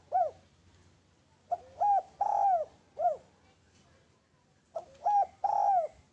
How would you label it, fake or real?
real